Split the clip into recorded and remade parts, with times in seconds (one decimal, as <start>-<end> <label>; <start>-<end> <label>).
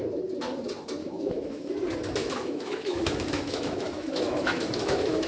0.0-1.0 recorded; 1.0-1.7 remade; 1.7-2.2 recorded; 2.2-5.3 remade